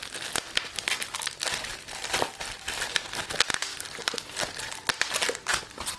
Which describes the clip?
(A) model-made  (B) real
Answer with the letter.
B